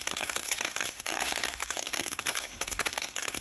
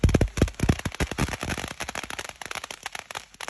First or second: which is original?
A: second